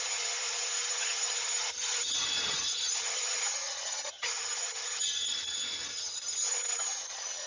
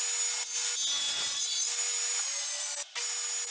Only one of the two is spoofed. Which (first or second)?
first